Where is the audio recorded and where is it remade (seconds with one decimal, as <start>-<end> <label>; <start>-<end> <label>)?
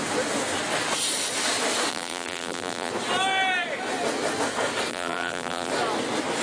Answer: 0.0-1.9 recorded; 1.9-2.9 remade; 2.9-4.9 recorded; 4.9-5.7 remade; 5.7-6.4 recorded